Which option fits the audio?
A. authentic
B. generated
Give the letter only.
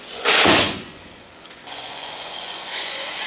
B